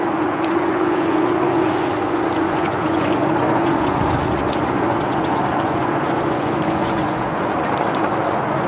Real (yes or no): no